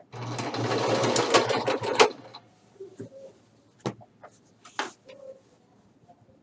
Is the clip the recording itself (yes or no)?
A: yes